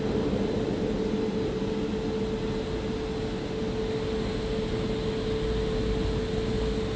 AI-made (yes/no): no